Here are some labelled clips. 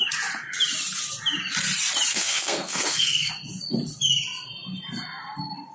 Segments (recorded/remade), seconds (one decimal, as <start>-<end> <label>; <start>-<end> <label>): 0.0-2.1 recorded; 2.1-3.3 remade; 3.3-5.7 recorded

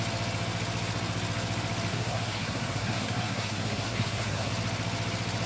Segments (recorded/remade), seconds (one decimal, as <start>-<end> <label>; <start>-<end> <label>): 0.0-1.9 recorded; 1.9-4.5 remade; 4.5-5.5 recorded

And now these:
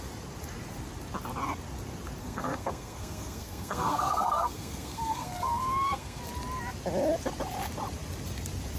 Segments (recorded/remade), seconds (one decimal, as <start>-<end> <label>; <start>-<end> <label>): 0.0-2.2 recorded; 2.2-6.2 remade; 6.2-8.8 recorded